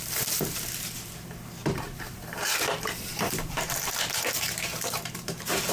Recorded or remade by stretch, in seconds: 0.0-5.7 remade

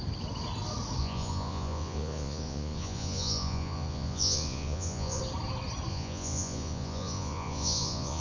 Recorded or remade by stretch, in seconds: 0.0-1.0 recorded; 1.0-5.2 remade; 5.2-5.9 recorded; 5.9-8.2 remade

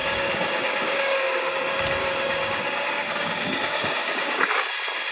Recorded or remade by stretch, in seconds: 0.0-1.5 remade; 1.5-2.0 recorded; 2.0-4.6 remade; 4.6-5.1 recorded

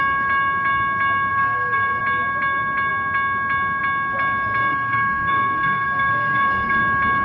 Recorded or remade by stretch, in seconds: 0.0-1.3 recorded; 1.3-2.0 remade; 2.0-4.6 recorded; 4.6-6.8 remade; 6.8-7.2 recorded

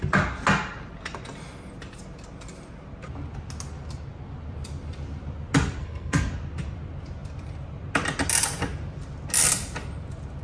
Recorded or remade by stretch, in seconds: 0.0-5.8 recorded; 5.8-6.3 remade; 6.3-10.4 recorded

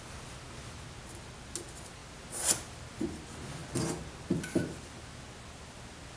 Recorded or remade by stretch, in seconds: 0.0-6.2 recorded